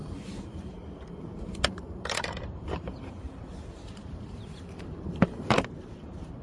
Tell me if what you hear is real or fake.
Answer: fake